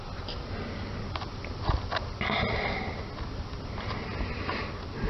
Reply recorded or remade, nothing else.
recorded